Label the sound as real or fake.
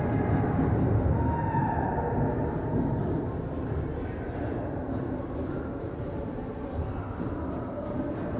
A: real